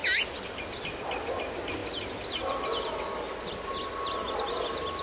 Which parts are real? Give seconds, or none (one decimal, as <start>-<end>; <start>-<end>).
0.0-5.0